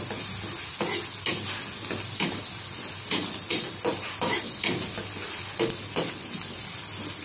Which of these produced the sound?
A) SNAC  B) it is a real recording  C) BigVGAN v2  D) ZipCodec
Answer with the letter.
B